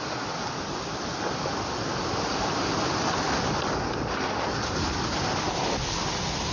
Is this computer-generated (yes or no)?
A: no